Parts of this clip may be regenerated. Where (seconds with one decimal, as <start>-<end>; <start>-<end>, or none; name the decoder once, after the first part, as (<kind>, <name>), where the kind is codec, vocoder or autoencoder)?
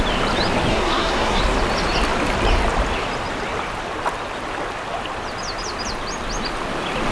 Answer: 0.7-1.4 (codec, SNAC)